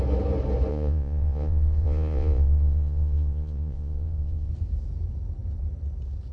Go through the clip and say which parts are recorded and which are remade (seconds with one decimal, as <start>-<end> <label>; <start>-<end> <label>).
0.0-0.7 recorded; 0.7-4.5 remade; 4.5-6.3 recorded